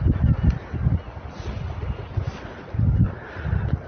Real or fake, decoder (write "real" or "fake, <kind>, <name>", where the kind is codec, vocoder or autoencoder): real